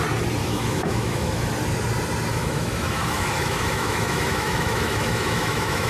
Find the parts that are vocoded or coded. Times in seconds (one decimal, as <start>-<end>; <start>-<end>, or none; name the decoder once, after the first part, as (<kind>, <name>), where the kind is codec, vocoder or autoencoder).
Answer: 0.4-1.5 (autoencoder, DAC-VAE); 2.3-5.9